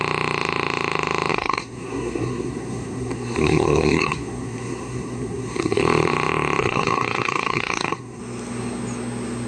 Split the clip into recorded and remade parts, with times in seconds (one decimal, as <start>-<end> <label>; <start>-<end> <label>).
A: 0.0-1.3 recorded; 1.3-5.8 remade; 5.8-6.6 recorded; 6.6-8.2 remade; 8.2-9.5 recorded